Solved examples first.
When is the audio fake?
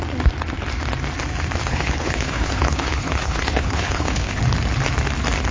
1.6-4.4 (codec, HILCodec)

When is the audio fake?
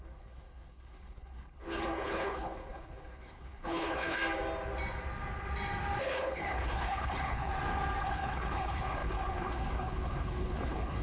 0.0-4.2 (codec, HILCodec); 6.0-7.5; 8.0-11.0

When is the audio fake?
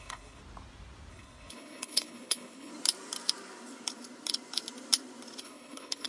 0.0-0.4 (codec, HILCodec); 1.1-2.7; 5.4-6.1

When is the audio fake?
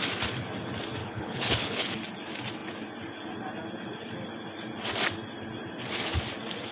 1.0-1.9 (codec, HILCodec)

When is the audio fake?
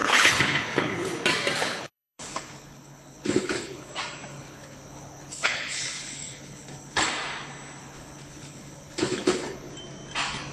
0.0-1.1 (codec, HILCodec); 1.6-3.9; 4.3-7.0; 7.8-9.7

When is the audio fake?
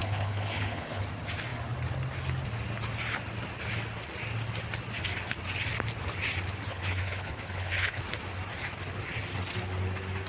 0.0-1.0 (codec, HILCodec); 6.7-8.0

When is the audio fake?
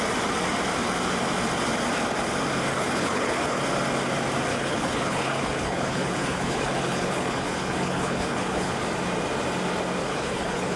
2.7-3.6 (codec, HILCodec); 4.5-8.7; 10.0-10.8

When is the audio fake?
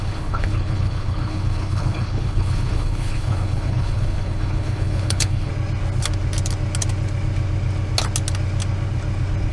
0.0-5.5 (codec, HILCodec)